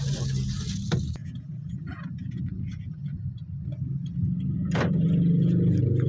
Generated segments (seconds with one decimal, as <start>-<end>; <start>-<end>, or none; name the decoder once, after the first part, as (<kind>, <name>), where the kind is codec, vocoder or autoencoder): 1.2-3.2 (vocoder, Vocos)